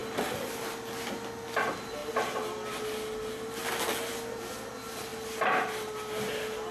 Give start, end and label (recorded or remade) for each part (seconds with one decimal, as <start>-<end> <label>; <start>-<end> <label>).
0.0-6.7 recorded